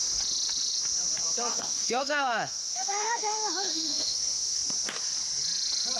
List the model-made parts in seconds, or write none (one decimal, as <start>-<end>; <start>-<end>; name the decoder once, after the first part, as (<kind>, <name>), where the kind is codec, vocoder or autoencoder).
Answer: 1.5-4.6 (autoencoder, DAC-VAE)